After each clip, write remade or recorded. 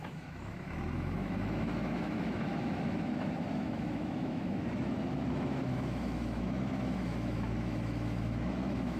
remade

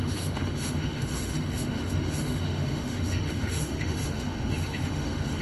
remade